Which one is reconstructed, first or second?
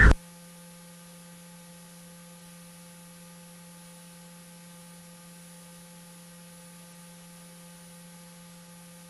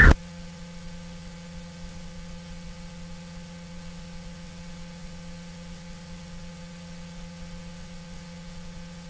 second